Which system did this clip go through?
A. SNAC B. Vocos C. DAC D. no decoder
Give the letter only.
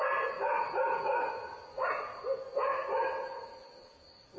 D